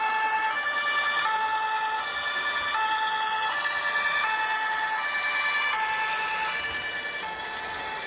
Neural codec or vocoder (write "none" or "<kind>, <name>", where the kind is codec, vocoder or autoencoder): none